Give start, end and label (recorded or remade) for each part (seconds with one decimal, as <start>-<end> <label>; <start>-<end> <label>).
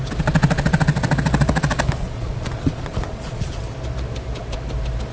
0.0-2.0 recorded; 2.0-3.6 remade; 3.6-5.1 recorded